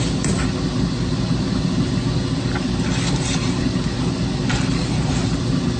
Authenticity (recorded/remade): recorded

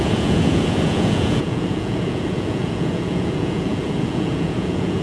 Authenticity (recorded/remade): remade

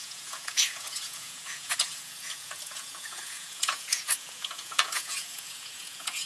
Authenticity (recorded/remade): remade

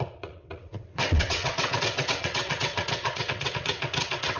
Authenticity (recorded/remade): remade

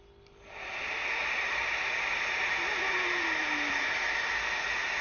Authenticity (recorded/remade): recorded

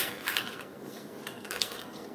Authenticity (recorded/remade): remade